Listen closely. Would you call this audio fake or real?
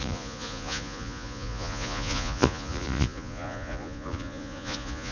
fake